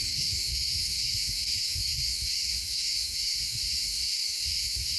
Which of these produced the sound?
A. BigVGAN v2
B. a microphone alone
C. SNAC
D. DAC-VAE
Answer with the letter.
D